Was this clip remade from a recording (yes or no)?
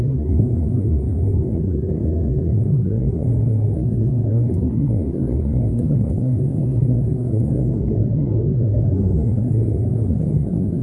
yes